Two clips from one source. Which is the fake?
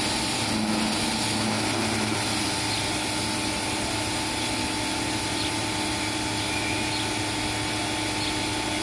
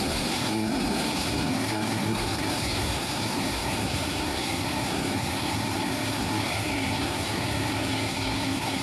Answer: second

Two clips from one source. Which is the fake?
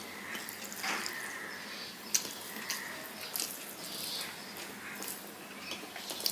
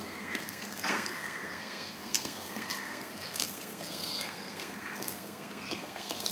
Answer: second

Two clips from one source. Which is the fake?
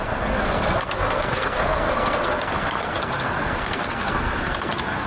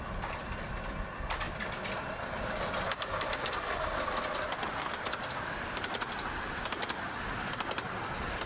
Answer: first